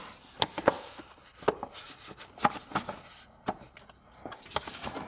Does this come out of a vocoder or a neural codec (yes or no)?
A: no